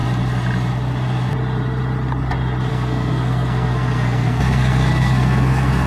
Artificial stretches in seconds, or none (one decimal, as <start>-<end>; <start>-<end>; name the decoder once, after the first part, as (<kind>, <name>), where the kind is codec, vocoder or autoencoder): 2.7-5.9 (codec, SNAC)